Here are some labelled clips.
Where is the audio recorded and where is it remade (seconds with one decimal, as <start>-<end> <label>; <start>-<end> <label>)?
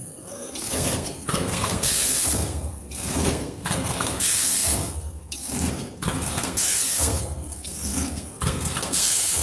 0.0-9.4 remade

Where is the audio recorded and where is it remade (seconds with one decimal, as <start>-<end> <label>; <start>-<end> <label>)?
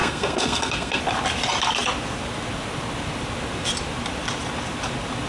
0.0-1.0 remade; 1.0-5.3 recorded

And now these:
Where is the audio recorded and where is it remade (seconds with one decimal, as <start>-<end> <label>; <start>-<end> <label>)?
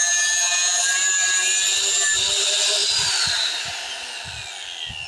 0.0-5.1 recorded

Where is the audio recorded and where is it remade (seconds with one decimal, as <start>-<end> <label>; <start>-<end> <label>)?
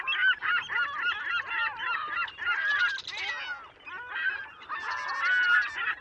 0.0-6.0 recorded